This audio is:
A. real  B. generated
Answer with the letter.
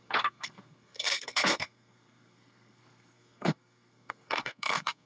B